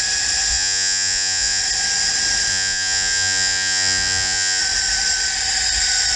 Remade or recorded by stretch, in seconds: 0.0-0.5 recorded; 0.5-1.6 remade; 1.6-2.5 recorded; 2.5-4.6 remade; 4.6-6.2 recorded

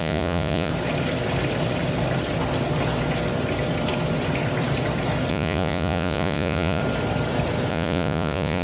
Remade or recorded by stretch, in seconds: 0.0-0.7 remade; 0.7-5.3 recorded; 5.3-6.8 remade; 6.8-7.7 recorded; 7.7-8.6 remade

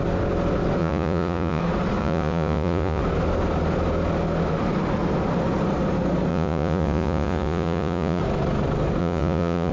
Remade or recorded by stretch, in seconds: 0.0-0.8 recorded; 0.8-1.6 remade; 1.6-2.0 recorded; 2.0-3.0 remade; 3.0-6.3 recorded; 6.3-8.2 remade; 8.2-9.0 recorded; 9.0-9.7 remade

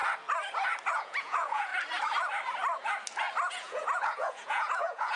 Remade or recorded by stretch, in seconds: 0.0-1.0 recorded; 1.0-1.7 remade; 1.7-3.5 recorded; 3.5-5.2 remade